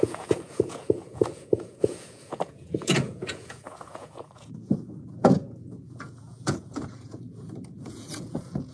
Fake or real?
fake